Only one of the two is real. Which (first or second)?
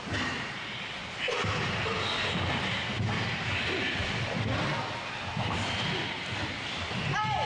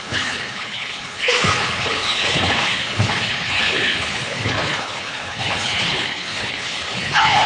first